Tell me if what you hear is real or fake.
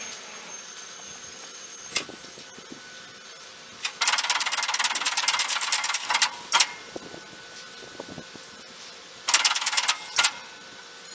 real